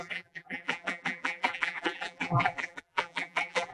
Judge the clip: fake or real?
fake